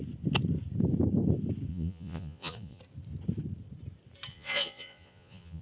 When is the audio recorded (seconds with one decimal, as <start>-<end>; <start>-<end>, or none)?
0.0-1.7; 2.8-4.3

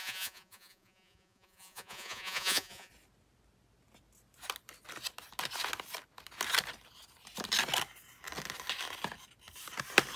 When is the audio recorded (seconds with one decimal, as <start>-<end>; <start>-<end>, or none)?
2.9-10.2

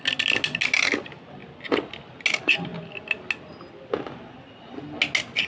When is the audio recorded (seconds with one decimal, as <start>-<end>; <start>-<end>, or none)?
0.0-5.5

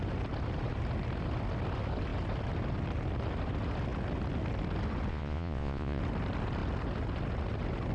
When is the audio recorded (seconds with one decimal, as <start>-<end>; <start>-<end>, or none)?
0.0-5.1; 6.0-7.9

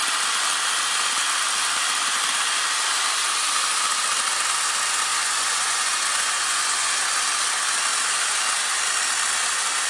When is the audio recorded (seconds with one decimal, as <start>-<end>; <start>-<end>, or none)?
0.0-5.1; 6.9-9.9